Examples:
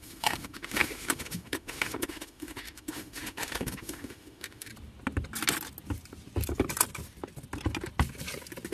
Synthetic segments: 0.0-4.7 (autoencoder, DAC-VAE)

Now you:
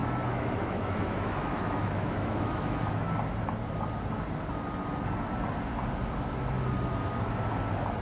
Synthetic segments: 0.0-3.1 (autoencoder, DAC-VAE)

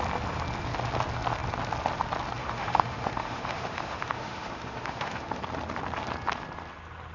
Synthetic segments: 2.4-5.4 (autoencoder, DAC-VAE)

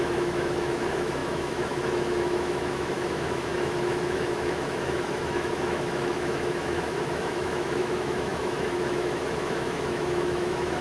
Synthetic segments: 0.0-10.8 (autoencoder, DAC-VAE)